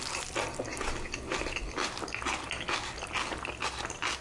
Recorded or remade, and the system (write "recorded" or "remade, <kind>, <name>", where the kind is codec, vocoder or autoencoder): recorded